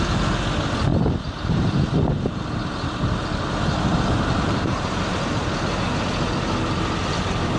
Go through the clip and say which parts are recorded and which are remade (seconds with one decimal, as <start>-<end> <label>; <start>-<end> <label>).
0.0-0.9 recorded; 0.9-2.4 remade; 2.4-3.9 recorded; 3.9-5.8 remade; 5.8-7.6 recorded